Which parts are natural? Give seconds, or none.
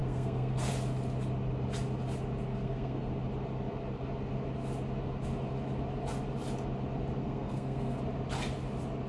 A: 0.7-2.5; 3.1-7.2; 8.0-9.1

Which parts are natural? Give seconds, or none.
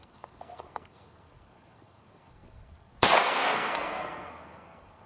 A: none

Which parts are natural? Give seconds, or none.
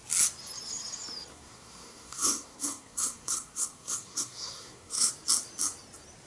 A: 0.0-1.3; 5.1-6.3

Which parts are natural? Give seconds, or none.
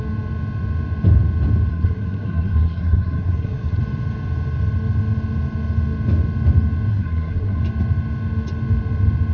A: 0.0-1.7; 3.8-6.9; 7.6-9.3